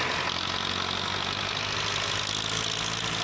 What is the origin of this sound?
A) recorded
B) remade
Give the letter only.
A